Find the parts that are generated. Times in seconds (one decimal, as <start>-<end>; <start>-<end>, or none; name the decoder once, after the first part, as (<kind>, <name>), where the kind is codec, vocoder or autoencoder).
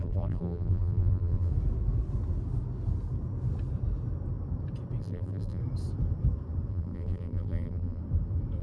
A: 0.0-1.5 (vocoder, BigVGAN v2); 5.0-5.6; 6.7-8.0